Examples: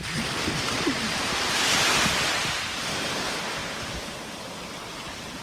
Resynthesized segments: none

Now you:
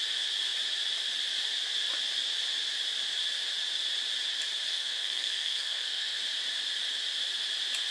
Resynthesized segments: 4.7-6.2 (codec, SNAC)

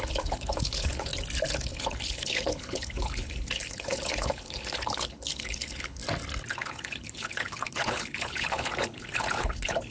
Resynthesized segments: 0.0-1.1 (codec, HILCodec); 1.6-6.0; 6.5-9.9

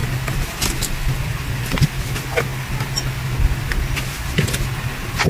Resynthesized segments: 0.0-1.9 (vocoder, BigVGAN v2)